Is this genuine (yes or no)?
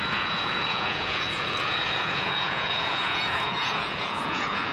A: no